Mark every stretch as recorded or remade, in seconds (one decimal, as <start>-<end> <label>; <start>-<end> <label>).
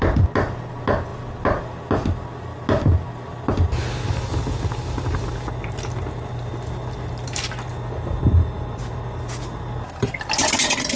0.0-11.0 recorded